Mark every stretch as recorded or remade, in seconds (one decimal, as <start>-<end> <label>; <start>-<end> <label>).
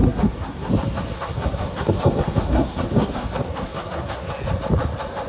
0.0-0.7 remade; 0.7-1.1 recorded; 1.1-4.3 remade; 4.3-5.3 recorded